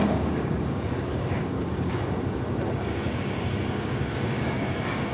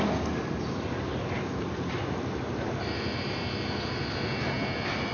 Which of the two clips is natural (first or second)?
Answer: second